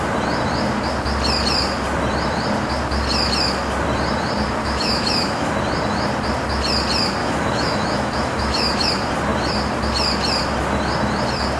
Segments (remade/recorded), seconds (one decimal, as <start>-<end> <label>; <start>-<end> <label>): 0.0-4.6 recorded; 4.6-5.5 remade; 5.5-7.2 recorded; 7.2-8.9 remade; 8.9-11.6 recorded